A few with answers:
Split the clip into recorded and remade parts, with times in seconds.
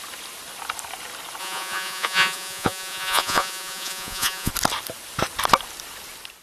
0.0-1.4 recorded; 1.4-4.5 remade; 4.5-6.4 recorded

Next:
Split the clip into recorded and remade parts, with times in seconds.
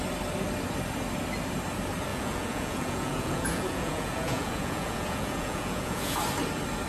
0.0-2.1 recorded; 2.1-6.2 remade; 6.2-6.9 recorded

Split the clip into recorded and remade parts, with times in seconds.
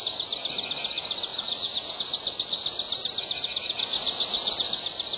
0.0-1.3 recorded; 1.3-1.9 remade; 1.9-5.2 recorded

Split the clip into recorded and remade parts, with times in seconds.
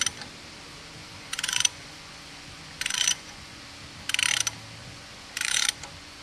0.0-1.0 recorded; 1.0-3.6 remade; 3.6-4.8 recorded; 4.8-6.2 remade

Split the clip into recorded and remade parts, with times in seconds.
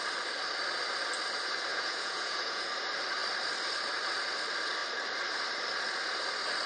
0.0-1.7 recorded; 1.7-2.7 remade; 2.7-6.7 recorded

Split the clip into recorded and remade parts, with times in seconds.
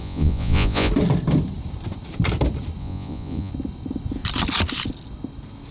0.0-0.9 remade; 0.9-2.8 recorded; 2.8-3.5 remade; 3.5-5.7 recorded